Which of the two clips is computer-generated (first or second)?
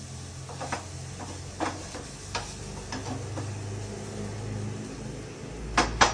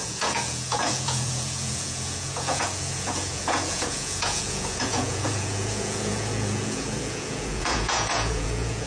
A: second